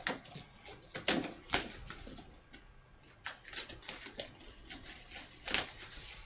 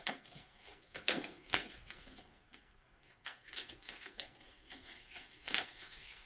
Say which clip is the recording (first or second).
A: first